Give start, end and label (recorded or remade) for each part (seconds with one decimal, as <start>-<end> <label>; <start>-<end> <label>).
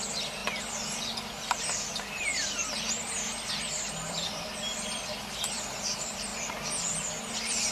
0.0-2.3 remade; 2.3-3.7 recorded; 3.7-6.3 remade; 6.3-7.3 recorded; 7.3-7.7 remade